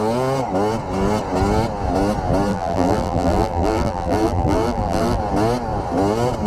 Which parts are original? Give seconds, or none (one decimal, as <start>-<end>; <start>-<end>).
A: 0.0-2.5; 5.2-6.5

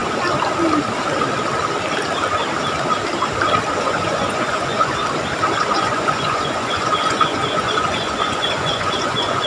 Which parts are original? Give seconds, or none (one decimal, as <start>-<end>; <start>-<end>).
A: 0.0-3.7; 5.0-5.6

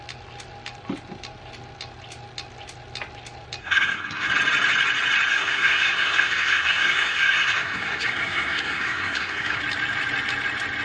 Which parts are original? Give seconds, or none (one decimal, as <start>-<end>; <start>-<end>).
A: 0.0-3.6; 4.3-5.3; 9.6-10.8